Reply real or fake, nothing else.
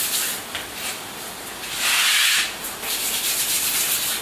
real